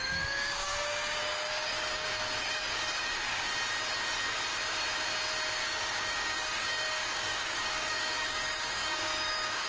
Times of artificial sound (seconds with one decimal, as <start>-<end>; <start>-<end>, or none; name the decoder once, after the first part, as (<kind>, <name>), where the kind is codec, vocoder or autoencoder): 0.0-3.5 (codec, DAC); 5.6-9.7